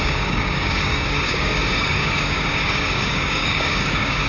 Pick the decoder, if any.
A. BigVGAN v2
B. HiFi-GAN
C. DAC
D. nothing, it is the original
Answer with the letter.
C